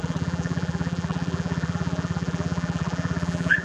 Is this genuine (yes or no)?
no